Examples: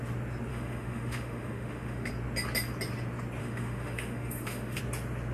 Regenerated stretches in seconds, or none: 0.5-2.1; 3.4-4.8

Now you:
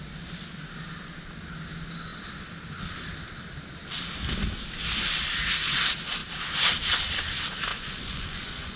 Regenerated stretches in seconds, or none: 7.7-8.8